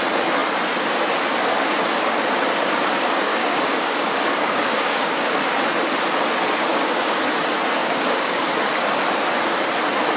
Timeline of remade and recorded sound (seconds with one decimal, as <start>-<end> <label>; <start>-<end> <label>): 0.0-3.3 recorded; 3.3-5.5 remade; 5.5-6.7 recorded; 6.7-7.2 remade; 7.2-7.8 recorded; 7.8-8.5 remade; 8.5-10.2 recorded